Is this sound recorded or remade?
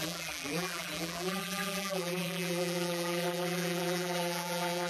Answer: remade